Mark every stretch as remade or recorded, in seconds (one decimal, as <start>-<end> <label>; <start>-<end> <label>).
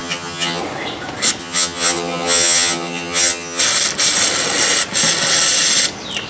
0.0-0.6 remade; 0.6-1.4 recorded; 1.4-3.6 remade; 3.6-6.3 recorded